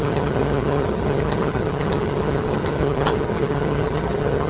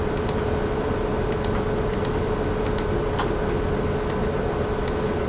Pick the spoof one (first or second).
first